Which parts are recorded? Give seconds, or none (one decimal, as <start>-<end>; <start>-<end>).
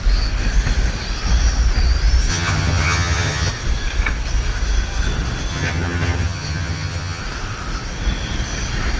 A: 0.0-2.3; 3.5-5.5; 7.2-9.0